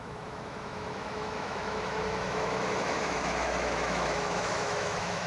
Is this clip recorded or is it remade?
remade